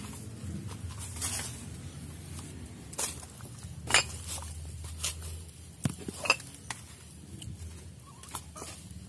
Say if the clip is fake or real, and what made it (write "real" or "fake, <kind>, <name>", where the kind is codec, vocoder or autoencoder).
real